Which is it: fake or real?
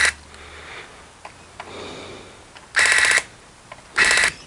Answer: real